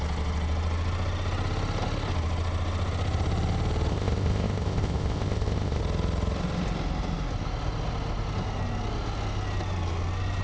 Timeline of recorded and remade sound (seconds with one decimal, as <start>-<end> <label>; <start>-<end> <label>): 0.0-3.9 recorded; 3.9-5.8 remade; 5.8-10.4 recorded